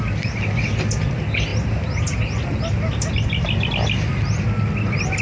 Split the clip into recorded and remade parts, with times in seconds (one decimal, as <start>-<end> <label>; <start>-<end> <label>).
0.0-5.2 recorded